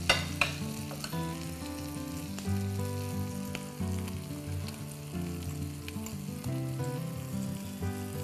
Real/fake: real